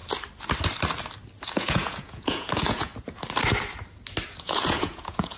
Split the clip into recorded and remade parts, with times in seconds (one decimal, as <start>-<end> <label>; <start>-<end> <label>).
0.0-1.5 recorded; 1.5-2.9 remade; 2.9-4.4 recorded; 4.4-5.4 remade